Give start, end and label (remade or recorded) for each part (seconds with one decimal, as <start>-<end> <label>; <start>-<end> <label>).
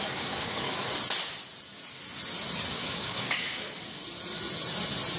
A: 0.0-0.9 remade; 0.9-2.7 recorded; 2.7-4.0 remade; 4.0-5.2 recorded